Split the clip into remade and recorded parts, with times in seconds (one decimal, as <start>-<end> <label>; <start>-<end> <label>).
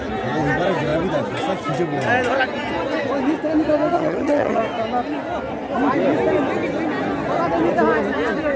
0.0-3.9 recorded; 3.9-4.6 remade; 4.6-8.6 recorded